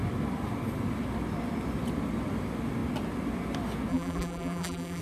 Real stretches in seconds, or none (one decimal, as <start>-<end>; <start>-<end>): 0.0-3.9